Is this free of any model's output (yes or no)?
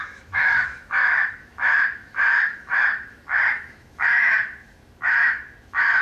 no